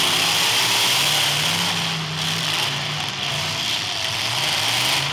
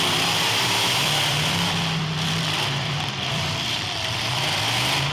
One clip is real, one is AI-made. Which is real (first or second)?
first